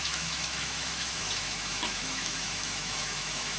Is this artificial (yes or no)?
yes